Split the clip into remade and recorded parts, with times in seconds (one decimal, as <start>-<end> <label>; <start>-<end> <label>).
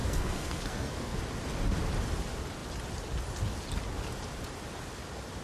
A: 0.0-1.2 remade; 1.2-5.4 recorded